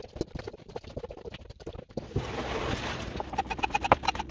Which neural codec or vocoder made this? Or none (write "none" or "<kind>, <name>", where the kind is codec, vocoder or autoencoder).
vocoder, BigVGAN v2